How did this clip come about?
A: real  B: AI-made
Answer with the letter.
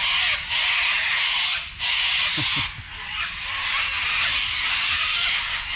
A